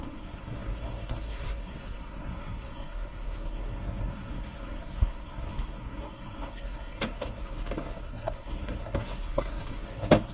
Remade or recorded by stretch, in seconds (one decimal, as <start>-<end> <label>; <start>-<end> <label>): 0.0-10.3 remade